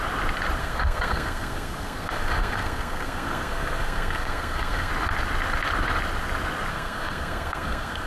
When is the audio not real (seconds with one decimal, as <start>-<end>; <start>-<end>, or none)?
0.6-4.9; 6.7-8.1